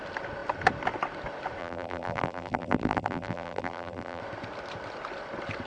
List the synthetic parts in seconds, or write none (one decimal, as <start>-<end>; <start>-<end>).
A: 1.6-4.2

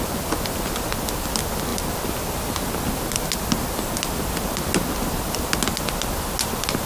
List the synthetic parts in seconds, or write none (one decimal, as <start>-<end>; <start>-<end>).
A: none

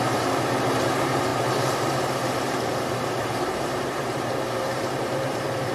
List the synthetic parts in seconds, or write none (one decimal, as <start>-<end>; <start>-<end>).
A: 0.0-5.7

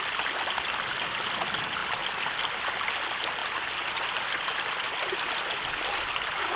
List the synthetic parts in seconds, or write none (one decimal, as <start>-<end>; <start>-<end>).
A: none